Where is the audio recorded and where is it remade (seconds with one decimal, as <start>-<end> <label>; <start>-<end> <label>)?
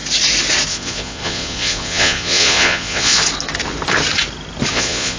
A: 0.0-0.7 recorded; 0.7-3.2 remade; 3.2-4.7 recorded; 4.7-5.2 remade